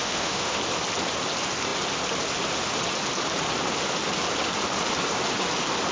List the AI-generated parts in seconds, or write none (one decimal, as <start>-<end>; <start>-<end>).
0.0-0.6